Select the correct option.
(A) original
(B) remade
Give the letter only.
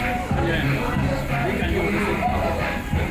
A